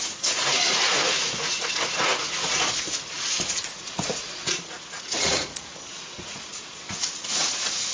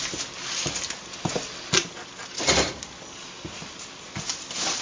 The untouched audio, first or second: second